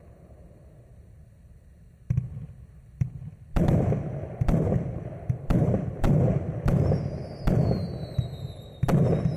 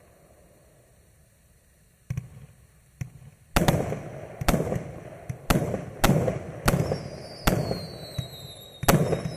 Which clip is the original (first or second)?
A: second